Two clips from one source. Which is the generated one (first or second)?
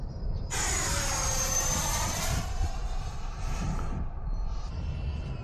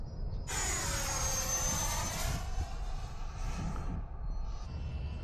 first